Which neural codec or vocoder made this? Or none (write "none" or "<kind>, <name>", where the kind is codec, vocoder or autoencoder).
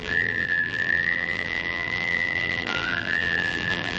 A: vocoder, BigVGAN v2